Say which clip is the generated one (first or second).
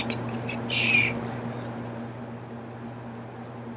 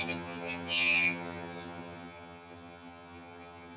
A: second